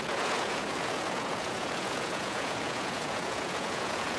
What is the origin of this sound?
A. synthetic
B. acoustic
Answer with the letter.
A